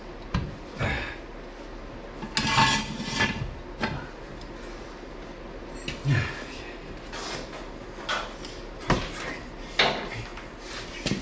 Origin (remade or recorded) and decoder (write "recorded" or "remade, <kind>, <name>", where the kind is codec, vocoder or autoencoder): recorded